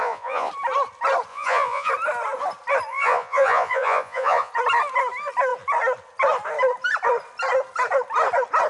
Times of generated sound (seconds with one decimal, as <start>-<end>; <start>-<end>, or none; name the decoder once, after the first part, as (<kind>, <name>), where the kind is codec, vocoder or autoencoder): 0.0-0.5 (vocoder, Vocos); 1.3-1.9; 2.9-4.5